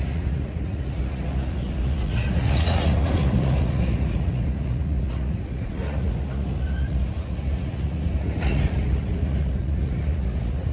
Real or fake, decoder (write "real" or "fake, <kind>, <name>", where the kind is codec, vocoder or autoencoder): fake, vocoder, Vocos